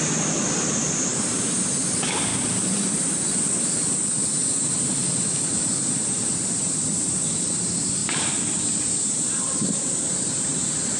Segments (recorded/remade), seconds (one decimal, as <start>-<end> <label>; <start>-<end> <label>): 0.0-2.3 recorded; 2.3-3.6 remade; 3.6-8.0 recorded; 8.0-11.0 remade